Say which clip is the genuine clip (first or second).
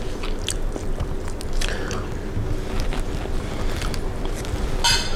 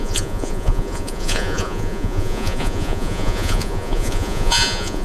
first